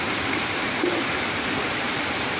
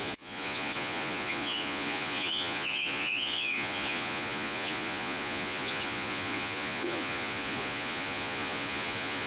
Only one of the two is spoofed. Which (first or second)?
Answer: second